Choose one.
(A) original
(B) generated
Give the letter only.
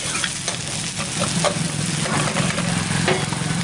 A